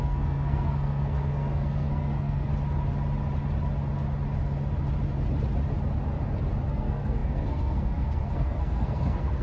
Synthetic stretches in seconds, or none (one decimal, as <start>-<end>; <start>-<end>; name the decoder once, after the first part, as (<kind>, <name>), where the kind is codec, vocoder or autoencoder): 0.0-2.5 (codec, SNAC); 6.7-9.4

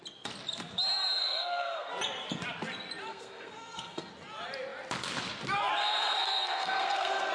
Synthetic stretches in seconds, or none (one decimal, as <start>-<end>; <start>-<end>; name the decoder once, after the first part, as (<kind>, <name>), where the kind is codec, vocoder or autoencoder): 1.2-1.9 (codec, SNAC); 3.1-4.1; 5.8-7.3

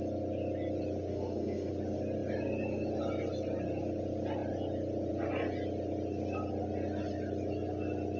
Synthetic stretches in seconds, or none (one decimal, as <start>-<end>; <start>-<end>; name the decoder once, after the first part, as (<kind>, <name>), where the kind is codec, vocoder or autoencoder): 1.1-1.7 (codec, SNAC)

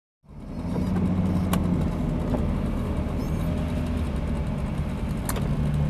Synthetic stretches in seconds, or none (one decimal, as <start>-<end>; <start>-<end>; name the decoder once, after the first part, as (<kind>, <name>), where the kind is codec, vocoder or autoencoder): none

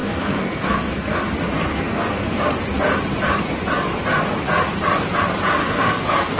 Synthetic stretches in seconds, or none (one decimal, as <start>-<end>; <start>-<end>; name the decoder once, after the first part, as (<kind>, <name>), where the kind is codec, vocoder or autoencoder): 0.0-1.2 (codec, SNAC); 1.7-2.4; 5.6-6.4